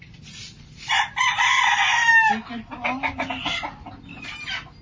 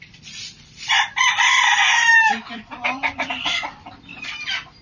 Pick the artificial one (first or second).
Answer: second